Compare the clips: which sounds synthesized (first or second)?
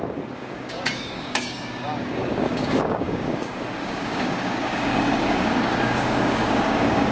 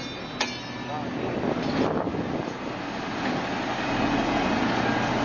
first